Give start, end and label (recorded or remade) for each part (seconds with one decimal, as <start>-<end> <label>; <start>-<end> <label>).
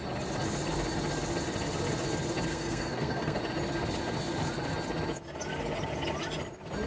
0.0-2.5 recorded; 2.5-3.4 remade; 3.4-6.9 recorded